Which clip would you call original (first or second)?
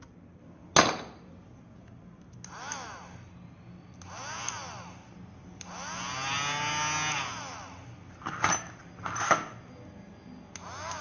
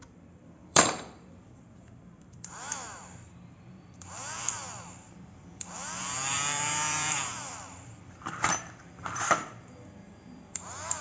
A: first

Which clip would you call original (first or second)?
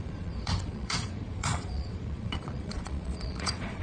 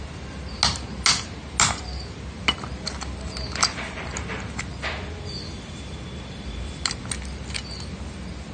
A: second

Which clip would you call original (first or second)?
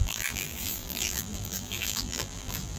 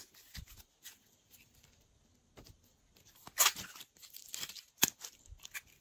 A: second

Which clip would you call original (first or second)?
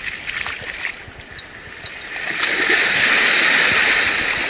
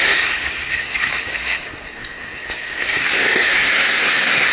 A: first